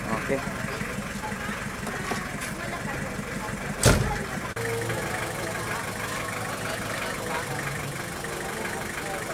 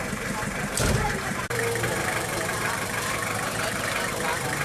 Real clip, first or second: first